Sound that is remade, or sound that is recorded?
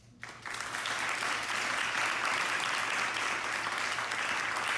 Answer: recorded